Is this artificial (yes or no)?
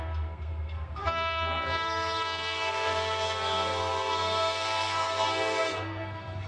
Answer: yes